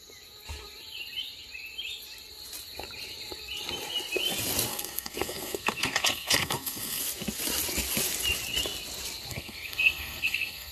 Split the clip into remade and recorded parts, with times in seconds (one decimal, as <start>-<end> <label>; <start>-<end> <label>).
0.0-4.7 recorded; 4.7-7.0 remade; 7.0-9.3 recorded; 9.3-10.7 remade

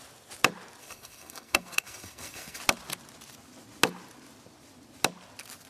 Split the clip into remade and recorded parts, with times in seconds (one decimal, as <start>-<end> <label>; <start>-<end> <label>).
0.0-0.8 recorded; 0.8-2.6 remade; 2.6-5.7 recorded